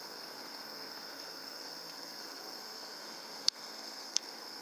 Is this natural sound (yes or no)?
no